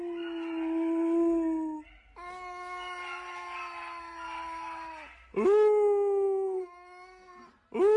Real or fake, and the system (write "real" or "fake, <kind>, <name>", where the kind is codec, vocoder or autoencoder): real